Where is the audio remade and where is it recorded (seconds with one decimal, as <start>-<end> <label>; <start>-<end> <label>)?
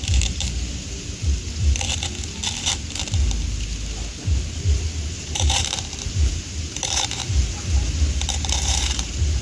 0.0-1.2 remade; 1.2-5.1 recorded; 5.1-9.4 remade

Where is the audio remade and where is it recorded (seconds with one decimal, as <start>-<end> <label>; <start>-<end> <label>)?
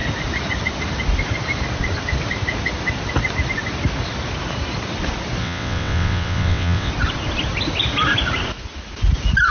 0.0-5.4 recorded; 5.4-6.9 remade; 6.9-9.5 recorded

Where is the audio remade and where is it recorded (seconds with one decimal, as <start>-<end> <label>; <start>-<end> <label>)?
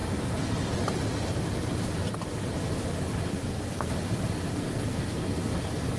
0.0-3.3 recorded; 3.3-3.9 remade; 3.9-4.5 recorded; 4.5-5.4 remade; 5.4-6.0 recorded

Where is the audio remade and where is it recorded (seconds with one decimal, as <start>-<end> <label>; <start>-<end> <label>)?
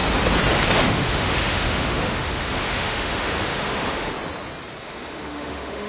0.0-0.8 recorded; 0.8-4.1 remade; 4.1-4.8 recorded; 4.8-5.9 remade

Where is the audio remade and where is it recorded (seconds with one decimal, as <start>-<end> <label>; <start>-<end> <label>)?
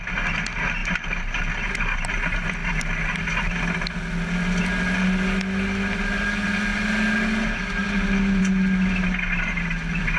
0.0-10.2 recorded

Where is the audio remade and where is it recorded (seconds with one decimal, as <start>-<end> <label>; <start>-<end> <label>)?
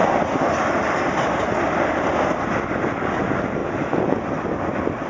0.0-5.1 recorded